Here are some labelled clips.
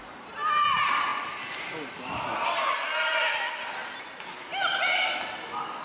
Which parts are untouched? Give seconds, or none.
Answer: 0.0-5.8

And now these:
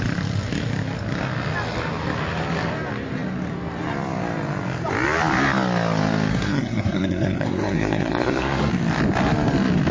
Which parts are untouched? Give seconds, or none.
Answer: 0.0-6.3; 8.7-9.9

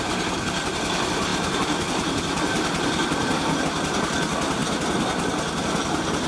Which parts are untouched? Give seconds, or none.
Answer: 0.0-6.3

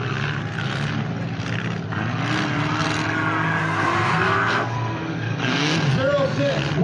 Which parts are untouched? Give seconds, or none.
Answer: 0.0-3.6; 5.9-6.8

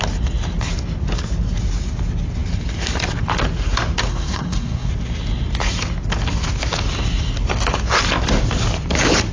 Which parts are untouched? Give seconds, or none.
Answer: 0.0-4.1; 4.9-9.3

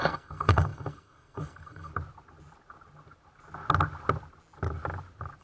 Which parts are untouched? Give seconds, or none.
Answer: 1.9-5.4